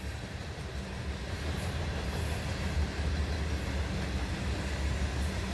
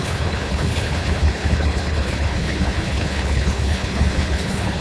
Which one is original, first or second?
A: first